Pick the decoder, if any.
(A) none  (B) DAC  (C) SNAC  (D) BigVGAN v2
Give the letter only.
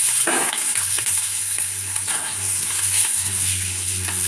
C